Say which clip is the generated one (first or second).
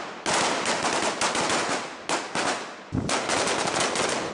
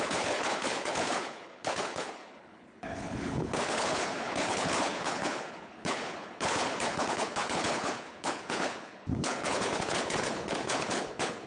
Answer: second